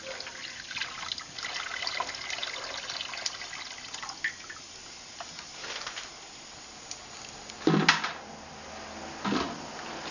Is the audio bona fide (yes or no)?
yes